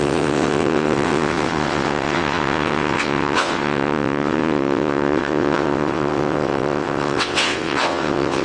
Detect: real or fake fake